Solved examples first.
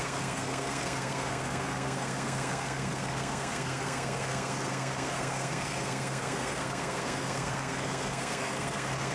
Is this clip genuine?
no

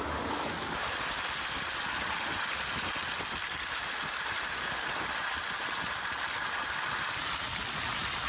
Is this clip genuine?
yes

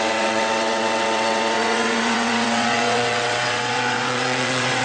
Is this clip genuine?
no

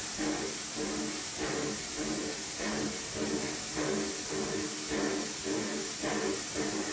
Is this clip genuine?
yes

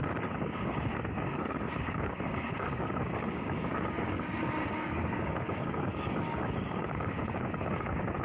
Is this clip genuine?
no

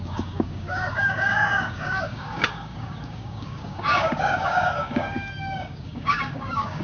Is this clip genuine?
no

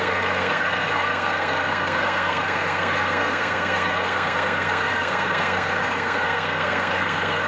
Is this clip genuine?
no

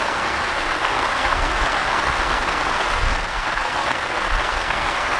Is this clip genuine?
no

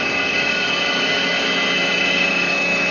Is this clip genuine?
no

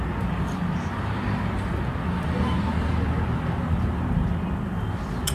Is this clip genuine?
yes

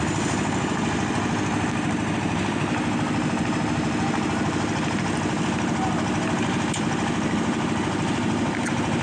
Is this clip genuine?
yes